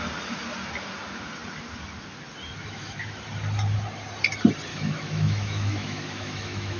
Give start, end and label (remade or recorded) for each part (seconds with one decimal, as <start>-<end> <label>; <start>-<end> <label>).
0.0-2.6 recorded; 2.6-3.2 remade; 3.2-4.7 recorded; 4.7-6.8 remade